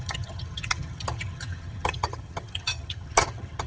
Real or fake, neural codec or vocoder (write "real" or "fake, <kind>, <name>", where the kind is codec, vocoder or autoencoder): fake, vocoder, HiFi-GAN